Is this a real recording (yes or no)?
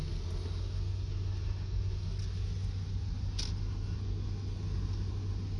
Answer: yes